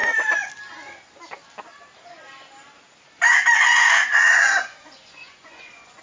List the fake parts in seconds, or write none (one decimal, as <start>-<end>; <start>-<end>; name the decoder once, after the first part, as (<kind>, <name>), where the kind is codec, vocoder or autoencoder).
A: 0.0-0.5 (vocoder, Vocos); 3.7-6.0